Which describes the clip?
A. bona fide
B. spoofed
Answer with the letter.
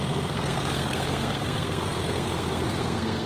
B